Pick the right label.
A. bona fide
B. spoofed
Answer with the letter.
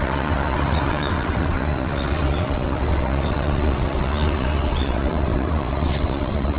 B